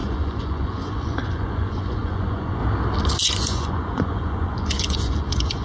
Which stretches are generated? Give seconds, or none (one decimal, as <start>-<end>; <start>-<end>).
0.0-2.6; 3.2-5.6